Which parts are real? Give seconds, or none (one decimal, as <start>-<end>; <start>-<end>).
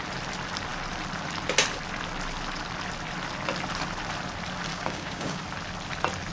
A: 0.0-4.7; 5.4-6.3